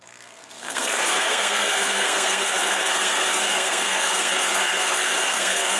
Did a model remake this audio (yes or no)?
yes